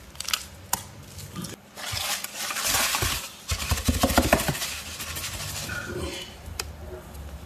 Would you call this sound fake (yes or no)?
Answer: no